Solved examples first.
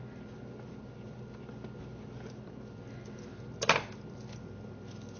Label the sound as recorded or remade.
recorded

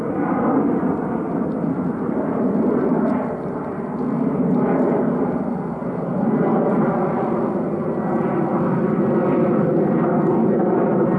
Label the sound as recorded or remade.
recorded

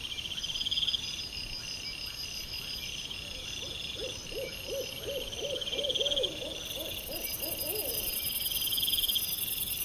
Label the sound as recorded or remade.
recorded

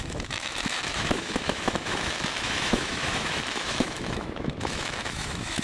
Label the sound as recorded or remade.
remade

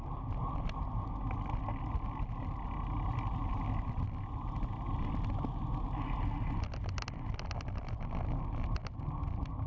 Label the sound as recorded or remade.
recorded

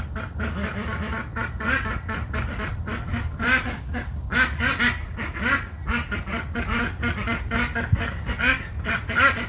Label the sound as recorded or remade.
recorded